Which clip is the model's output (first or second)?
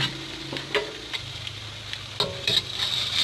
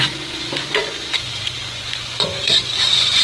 second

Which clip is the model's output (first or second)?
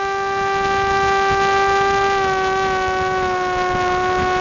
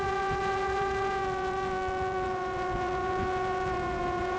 second